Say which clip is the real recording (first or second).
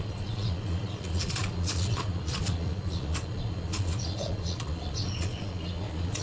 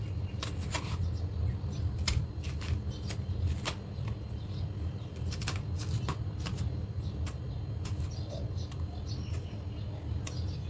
second